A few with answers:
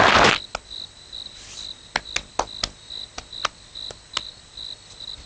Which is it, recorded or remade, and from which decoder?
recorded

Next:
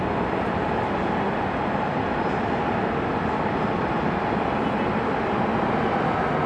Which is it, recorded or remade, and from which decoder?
recorded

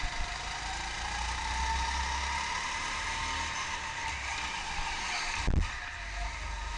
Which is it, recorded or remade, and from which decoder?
recorded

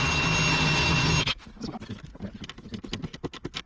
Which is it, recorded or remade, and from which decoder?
recorded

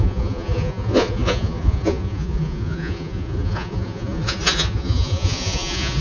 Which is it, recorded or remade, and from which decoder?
remade, vocoder, Vocos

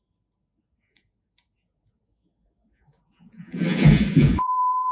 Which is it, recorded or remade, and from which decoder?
remade, vocoder, Vocos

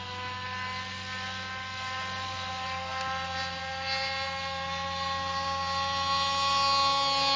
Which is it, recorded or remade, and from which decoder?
recorded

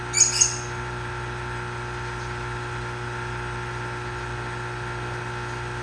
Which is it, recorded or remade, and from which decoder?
recorded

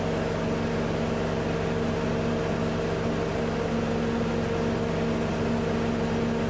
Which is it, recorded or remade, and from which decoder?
recorded